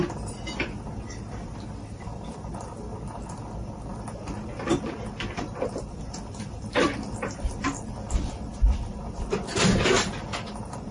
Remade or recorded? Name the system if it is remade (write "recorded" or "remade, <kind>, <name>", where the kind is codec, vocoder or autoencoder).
recorded